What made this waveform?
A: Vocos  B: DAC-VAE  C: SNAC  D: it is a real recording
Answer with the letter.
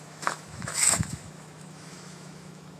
B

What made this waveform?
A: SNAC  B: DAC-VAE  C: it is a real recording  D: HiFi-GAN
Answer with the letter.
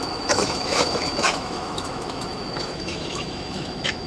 B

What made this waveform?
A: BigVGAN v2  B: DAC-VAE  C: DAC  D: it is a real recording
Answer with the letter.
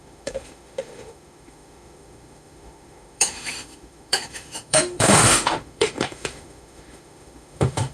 B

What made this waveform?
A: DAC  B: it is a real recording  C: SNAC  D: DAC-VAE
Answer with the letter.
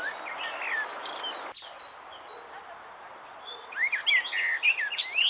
B